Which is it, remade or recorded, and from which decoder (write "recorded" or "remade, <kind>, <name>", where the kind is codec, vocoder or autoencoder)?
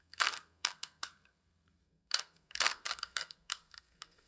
remade, codec, SNAC